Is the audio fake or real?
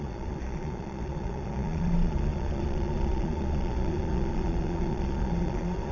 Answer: fake